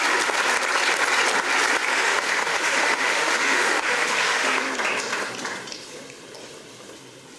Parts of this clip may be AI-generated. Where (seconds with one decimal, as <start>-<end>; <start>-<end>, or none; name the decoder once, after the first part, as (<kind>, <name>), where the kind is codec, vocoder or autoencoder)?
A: 1.9-4.6 (autoencoder, DAC-VAE)